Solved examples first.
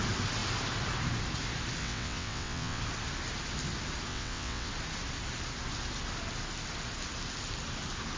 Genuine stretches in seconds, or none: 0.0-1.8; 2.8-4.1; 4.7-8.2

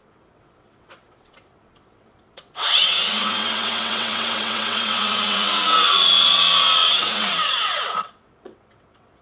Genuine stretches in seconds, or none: none

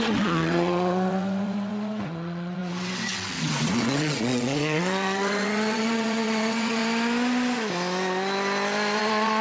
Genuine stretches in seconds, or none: 6.8-9.0